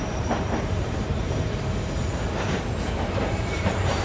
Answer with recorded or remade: remade